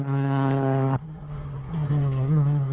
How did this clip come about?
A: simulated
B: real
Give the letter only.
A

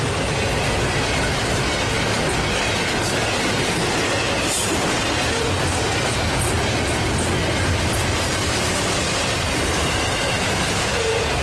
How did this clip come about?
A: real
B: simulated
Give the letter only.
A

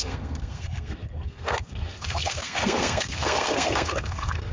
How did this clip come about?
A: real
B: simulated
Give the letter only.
B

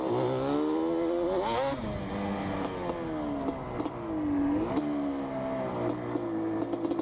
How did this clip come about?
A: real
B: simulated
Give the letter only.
A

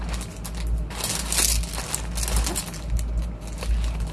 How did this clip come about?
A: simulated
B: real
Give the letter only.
B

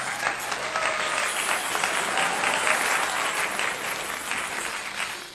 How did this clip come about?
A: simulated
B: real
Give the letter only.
B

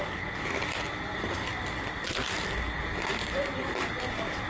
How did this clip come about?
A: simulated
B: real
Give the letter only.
B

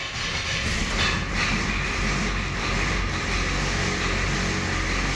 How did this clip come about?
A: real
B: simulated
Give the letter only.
A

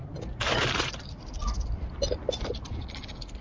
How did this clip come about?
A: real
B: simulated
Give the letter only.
A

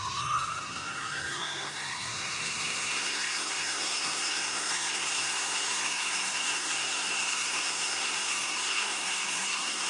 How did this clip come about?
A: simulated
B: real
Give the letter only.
A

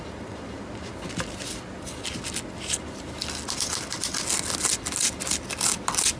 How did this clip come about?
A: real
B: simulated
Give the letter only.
A